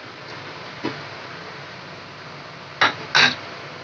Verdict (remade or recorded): recorded